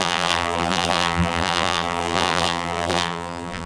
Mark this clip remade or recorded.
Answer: remade